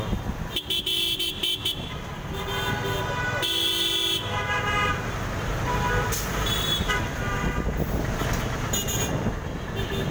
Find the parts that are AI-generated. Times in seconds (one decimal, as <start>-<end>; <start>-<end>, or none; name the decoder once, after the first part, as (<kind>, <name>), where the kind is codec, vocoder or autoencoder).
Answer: none